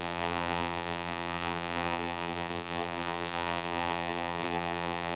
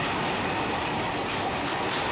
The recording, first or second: second